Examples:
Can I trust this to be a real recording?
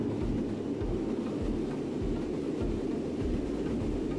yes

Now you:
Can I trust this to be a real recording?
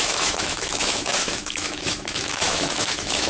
no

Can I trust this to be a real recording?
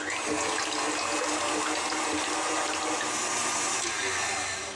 yes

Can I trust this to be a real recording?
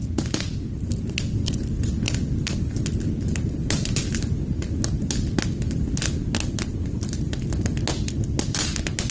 yes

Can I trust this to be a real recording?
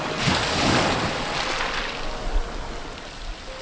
yes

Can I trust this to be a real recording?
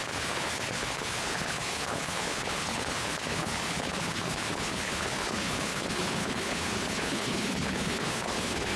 no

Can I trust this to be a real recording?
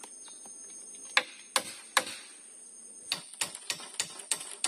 yes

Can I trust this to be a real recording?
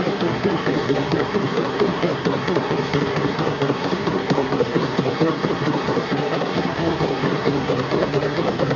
no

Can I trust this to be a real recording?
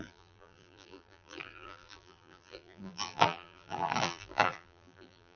no